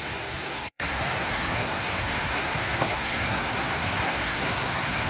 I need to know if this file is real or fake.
fake